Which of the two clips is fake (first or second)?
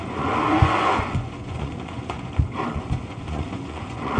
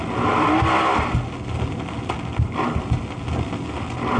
first